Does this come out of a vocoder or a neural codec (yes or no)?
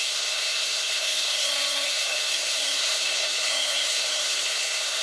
yes